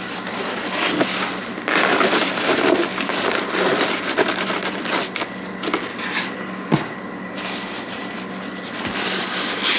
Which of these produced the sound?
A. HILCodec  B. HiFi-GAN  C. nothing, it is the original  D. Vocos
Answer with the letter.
C